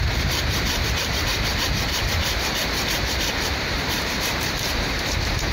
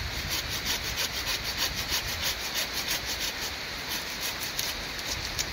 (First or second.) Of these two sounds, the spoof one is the first